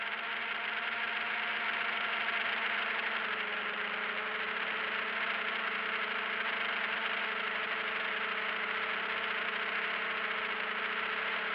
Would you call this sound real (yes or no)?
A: yes